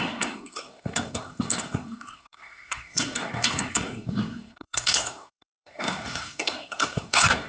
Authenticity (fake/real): fake